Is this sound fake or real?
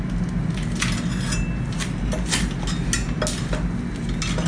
real